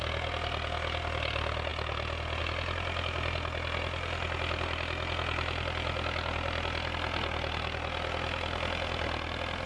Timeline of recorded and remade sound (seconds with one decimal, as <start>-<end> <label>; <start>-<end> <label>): 0.0-9.7 recorded

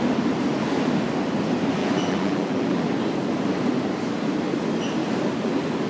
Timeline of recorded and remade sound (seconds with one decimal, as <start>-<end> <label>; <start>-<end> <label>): 0.0-1.8 recorded; 1.8-2.8 remade; 2.8-5.9 recorded

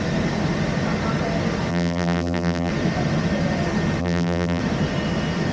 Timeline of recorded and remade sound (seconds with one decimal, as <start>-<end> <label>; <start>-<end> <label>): 0.0-1.7 recorded; 1.7-2.7 remade; 2.7-4.0 recorded; 4.0-4.6 remade; 4.6-5.5 recorded

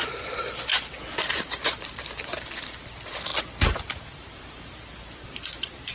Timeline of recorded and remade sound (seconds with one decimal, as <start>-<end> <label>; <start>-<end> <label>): 0.0-3.3 remade; 3.3-3.8 recorded; 3.8-5.9 remade